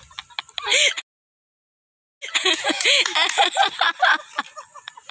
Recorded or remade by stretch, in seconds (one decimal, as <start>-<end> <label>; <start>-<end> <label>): 0.0-2.3 recorded; 2.3-3.1 remade; 3.1-5.1 recorded

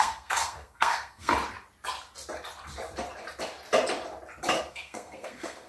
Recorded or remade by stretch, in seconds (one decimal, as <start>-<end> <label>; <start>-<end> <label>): 0.0-1.3 remade; 1.3-4.7 recorded; 4.7-5.7 remade

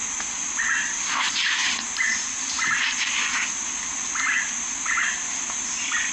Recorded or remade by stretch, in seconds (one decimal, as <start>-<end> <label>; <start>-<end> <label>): 0.0-6.1 recorded

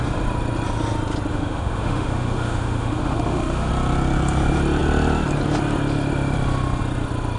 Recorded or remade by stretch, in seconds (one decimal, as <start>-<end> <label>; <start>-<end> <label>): 0.0-1.3 recorded; 1.3-3.7 remade; 3.7-7.4 recorded